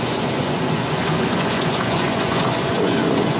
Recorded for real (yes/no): no